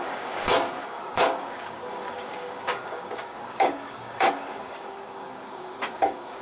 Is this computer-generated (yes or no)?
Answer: yes